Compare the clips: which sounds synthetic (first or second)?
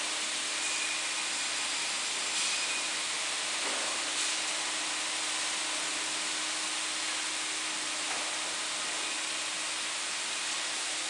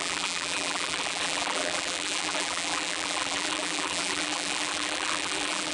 second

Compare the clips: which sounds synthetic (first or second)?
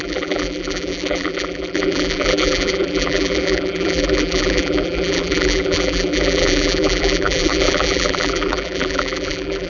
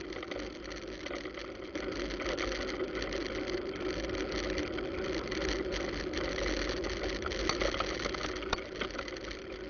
first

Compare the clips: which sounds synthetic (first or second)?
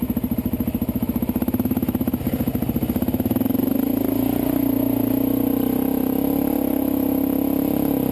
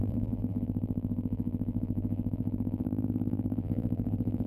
second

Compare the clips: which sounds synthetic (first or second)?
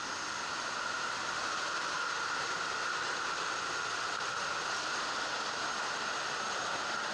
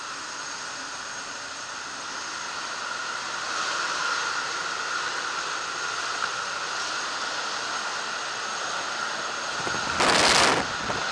first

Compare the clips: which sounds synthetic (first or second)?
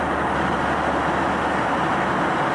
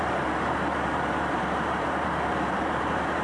second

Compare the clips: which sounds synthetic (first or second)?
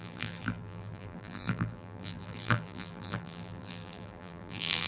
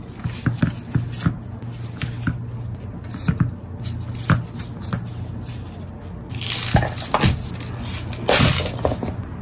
first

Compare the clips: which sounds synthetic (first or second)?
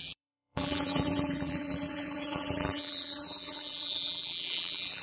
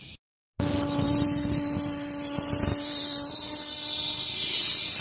first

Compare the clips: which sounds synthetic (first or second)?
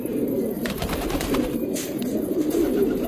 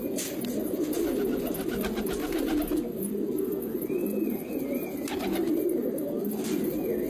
first